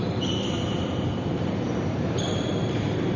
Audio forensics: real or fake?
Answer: fake